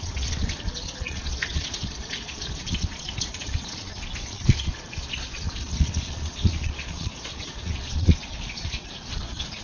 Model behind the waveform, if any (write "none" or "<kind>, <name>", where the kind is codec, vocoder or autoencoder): vocoder, Vocos